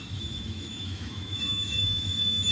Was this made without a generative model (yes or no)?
no